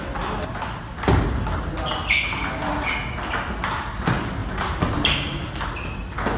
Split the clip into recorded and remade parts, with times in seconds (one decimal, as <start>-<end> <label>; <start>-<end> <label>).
0.0-4.4 recorded; 4.4-4.9 remade; 4.9-6.4 recorded